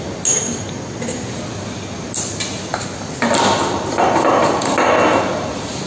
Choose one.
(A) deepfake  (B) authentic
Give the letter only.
B